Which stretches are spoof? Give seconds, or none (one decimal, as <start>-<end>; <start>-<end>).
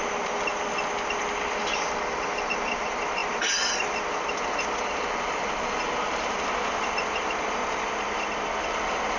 none